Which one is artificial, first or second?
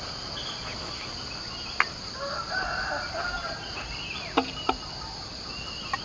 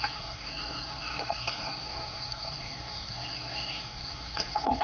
second